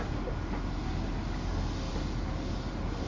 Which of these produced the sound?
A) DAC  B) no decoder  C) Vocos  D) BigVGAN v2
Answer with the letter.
B